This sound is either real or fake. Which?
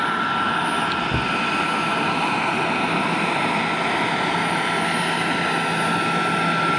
real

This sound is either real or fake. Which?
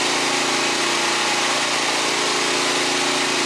real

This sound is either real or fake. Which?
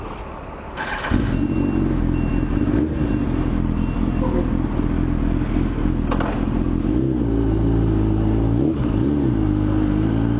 real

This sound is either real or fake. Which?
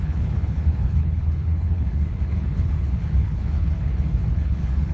fake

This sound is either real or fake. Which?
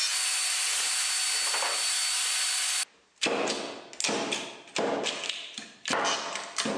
real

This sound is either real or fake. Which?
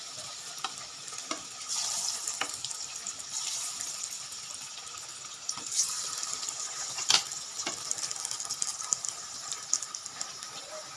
real